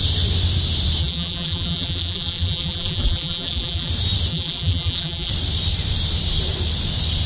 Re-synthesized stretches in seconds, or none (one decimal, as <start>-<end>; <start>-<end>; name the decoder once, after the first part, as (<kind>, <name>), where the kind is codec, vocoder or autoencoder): 1.0-3.9 (vocoder, BigVGAN v2); 4.3-5.3